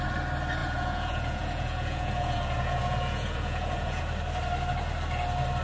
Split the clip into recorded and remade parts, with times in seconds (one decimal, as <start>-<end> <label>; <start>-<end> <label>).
0.0-0.6 recorded; 0.6-4.0 remade; 4.0-5.6 recorded